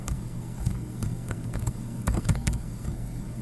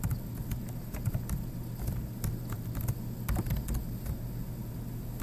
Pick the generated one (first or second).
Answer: first